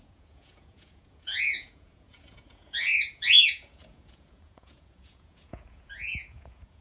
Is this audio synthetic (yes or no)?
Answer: yes